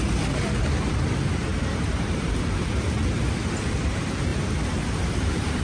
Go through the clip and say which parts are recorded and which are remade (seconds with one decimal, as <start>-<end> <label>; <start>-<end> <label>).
0.0-1.5 recorded; 1.5-3.3 remade; 3.3-5.6 recorded